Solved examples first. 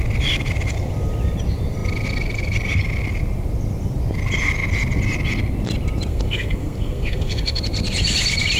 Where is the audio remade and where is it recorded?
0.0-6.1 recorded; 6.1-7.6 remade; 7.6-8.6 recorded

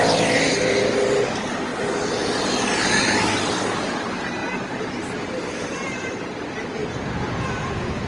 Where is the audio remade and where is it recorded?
0.0-8.1 recorded

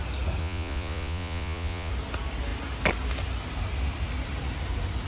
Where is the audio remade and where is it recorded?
0.0-0.4 recorded; 0.4-1.9 remade; 1.9-5.1 recorded

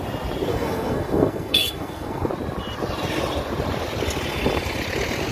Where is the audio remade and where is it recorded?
0.0-0.5 recorded; 0.5-2.3 remade; 2.3-5.3 recorded

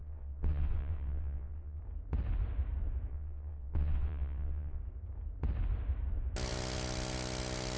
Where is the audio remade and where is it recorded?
0.0-1.8 remade; 1.8-3.1 recorded; 3.1-4.8 remade; 4.8-7.8 recorded

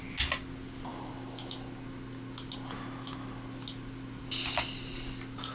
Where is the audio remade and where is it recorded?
0.0-5.5 recorded

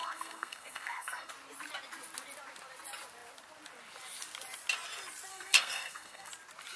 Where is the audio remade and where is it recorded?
0.0-1.3 remade; 1.3-5.3 recorded; 5.3-6.3 remade; 6.3-6.8 recorded